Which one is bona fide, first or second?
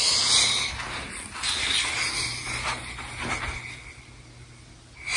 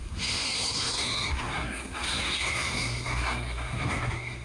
first